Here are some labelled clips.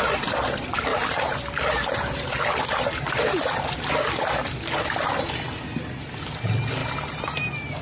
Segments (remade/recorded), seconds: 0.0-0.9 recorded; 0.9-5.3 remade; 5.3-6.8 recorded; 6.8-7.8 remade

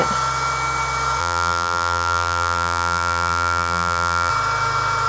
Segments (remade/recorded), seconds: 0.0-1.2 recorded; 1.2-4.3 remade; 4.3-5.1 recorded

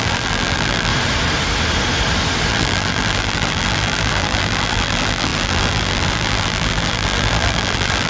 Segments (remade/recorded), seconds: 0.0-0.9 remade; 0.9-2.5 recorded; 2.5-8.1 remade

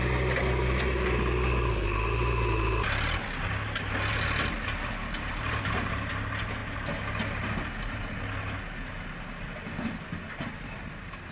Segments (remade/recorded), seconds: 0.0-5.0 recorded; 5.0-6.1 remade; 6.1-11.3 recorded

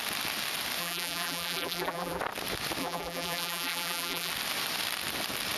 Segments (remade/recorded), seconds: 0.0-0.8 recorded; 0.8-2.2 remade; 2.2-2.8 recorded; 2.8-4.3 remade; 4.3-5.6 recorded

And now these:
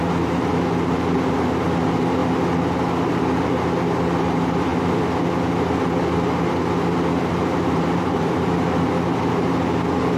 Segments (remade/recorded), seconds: 0.0-2.2 remade; 2.2-4.2 recorded; 4.2-4.7 remade; 4.7-7.3 recorded; 7.3-10.2 remade

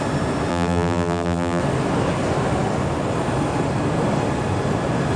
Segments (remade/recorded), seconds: 0.0-0.5 recorded; 0.5-1.6 remade; 1.6-5.2 recorded